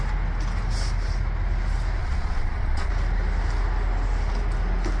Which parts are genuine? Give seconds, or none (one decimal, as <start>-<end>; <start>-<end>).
0.0-2.0; 2.9-5.0